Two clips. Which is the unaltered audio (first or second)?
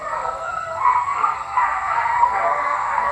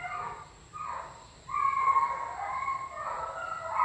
second